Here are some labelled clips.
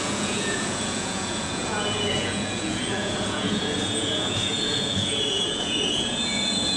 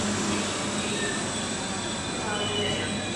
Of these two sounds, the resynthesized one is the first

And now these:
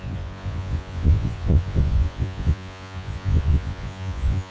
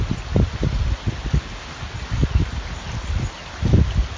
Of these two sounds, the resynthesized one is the first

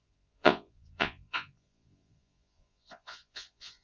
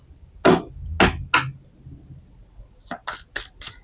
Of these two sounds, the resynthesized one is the first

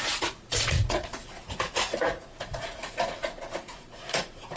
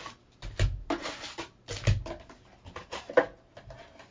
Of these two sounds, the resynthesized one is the first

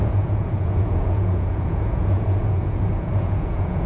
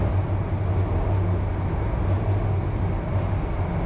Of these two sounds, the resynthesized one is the first